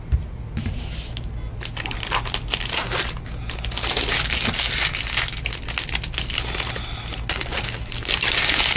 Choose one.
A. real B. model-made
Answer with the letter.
A